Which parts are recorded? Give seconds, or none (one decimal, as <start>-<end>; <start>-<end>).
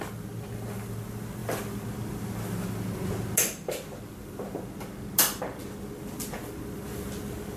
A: 0.0-7.6